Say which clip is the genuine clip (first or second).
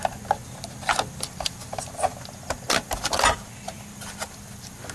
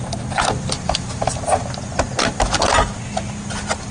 second